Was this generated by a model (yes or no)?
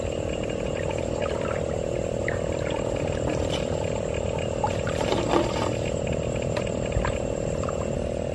no